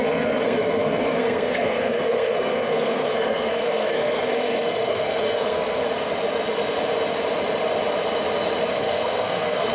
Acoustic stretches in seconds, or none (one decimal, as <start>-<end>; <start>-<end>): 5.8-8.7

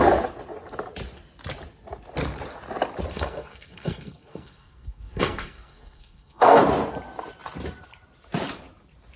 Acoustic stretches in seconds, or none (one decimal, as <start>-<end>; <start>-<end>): 0.0-3.1; 6.6-9.2

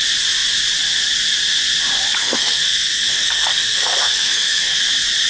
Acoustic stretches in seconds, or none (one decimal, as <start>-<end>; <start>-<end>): 0.0-2.2; 4.8-5.3

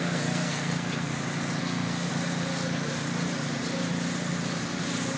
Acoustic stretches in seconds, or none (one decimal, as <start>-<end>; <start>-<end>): 1.1-1.6; 2.1-5.2

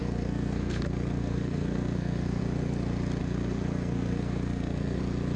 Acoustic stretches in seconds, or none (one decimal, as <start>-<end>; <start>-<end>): 2.4-3.2; 5.0-5.4

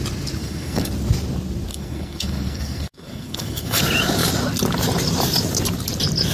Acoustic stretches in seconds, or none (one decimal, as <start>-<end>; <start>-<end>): 0.0-0.4; 0.9-1.7; 3.8-6.3

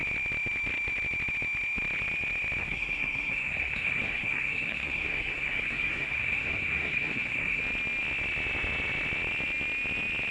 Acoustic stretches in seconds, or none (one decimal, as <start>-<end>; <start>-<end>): 0.0-2.6; 7.6-10.3